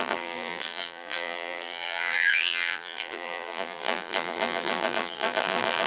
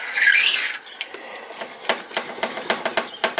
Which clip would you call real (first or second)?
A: second